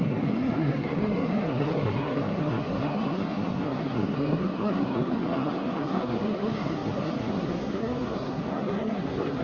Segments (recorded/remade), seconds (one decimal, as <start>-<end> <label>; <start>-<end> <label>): 0.0-9.4 remade